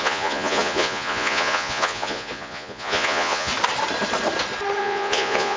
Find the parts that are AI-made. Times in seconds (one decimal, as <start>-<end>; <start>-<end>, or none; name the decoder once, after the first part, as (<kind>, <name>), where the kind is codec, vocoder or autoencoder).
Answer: 0.0-3.5 (vocoder, Vocos); 4.8-5.6